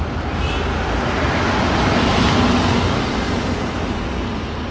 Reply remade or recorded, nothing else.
recorded